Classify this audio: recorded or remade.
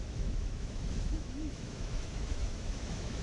remade